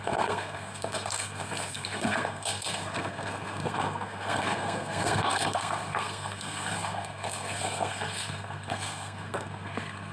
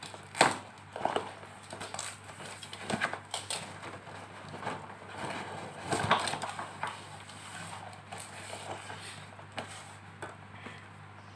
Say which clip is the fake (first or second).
first